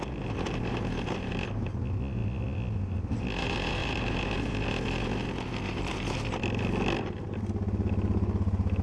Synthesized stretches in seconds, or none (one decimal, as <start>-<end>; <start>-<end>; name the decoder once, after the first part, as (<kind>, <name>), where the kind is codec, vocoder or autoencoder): none